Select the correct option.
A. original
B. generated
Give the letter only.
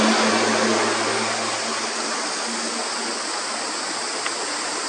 A